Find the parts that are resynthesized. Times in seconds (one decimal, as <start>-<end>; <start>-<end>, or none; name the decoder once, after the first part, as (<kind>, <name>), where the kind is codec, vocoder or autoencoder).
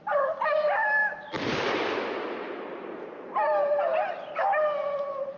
none